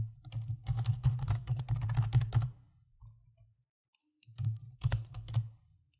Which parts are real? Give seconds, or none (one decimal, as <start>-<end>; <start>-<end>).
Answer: 0.0-0.6; 1.6-4.0; 5.3-6.0